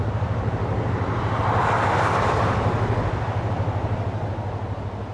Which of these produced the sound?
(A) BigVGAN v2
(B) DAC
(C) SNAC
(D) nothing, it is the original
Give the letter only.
D